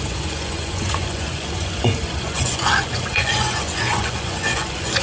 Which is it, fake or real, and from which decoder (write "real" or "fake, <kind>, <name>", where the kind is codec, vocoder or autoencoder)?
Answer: fake, vocoder, Vocos